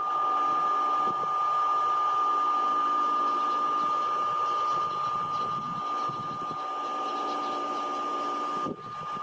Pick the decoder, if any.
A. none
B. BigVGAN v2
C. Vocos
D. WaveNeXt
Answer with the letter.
A